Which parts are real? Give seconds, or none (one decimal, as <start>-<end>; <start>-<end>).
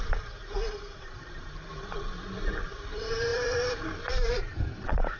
0.4-1.0; 1.7-2.5